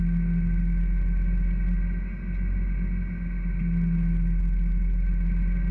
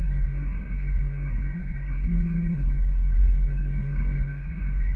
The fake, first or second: second